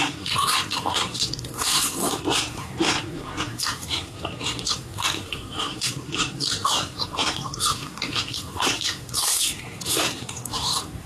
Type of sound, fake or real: fake